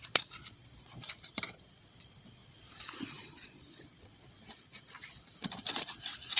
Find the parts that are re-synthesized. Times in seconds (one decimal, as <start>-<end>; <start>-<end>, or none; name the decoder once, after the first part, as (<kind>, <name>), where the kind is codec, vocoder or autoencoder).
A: 0.0-6.4 (vocoder, Vocos)